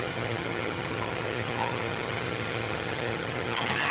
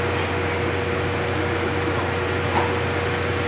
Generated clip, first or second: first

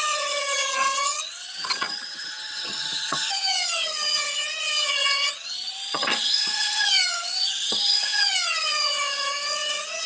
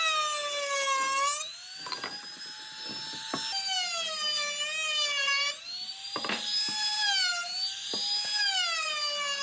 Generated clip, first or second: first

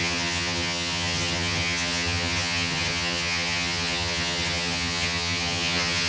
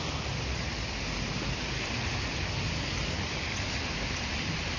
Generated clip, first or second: first